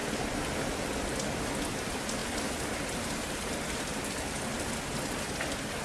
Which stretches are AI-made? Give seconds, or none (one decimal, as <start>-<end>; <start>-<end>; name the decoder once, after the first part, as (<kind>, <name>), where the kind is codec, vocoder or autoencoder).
none